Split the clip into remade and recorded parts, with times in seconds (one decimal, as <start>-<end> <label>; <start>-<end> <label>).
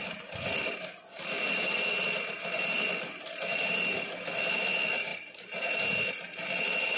0.0-3.2 recorded; 3.2-4.2 remade; 4.2-5.1 recorded; 5.1-6.1 remade; 6.1-7.0 recorded